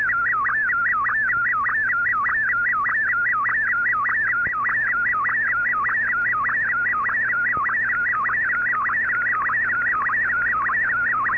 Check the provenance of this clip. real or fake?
real